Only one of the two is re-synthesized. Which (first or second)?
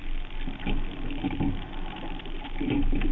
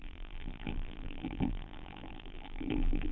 second